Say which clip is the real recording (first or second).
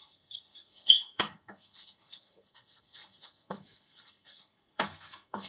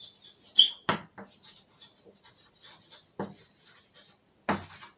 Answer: second